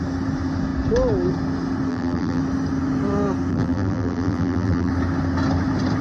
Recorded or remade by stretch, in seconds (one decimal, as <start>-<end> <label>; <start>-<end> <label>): 0.0-1.9 recorded; 1.9-2.4 remade; 2.4-3.5 recorded; 3.5-4.9 remade; 4.9-6.0 recorded